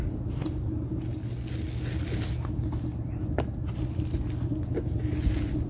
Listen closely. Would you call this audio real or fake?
real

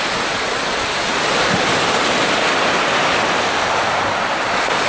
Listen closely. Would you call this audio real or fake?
real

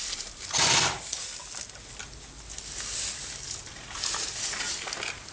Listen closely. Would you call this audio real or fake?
real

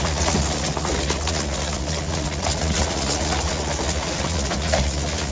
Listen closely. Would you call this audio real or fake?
fake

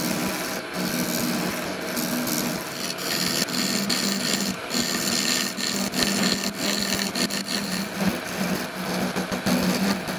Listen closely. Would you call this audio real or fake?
real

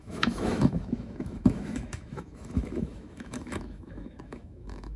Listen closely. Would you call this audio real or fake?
fake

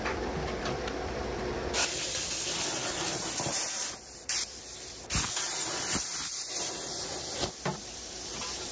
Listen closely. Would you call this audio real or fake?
fake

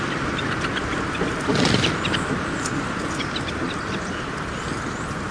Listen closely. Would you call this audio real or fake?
real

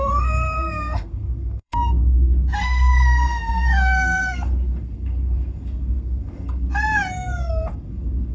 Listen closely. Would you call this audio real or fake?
fake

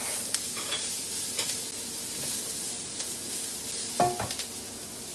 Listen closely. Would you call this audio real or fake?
real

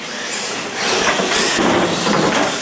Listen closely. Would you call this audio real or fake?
real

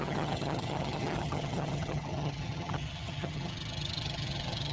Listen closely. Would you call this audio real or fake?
fake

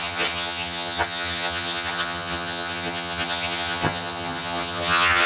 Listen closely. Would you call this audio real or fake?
fake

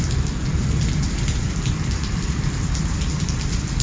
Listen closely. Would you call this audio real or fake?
real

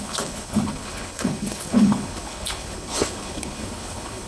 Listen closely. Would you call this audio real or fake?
fake